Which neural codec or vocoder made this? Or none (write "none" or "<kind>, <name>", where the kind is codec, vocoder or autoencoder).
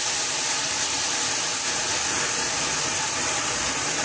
none